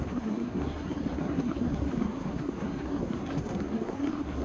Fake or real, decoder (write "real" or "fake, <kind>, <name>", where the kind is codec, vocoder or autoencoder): fake, codec, SNAC